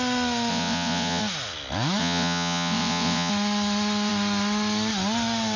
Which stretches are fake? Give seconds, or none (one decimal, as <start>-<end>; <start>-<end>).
0.5-1.2; 2.0-3.3